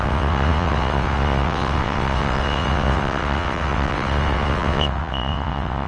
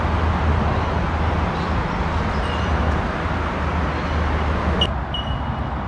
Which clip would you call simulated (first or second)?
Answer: first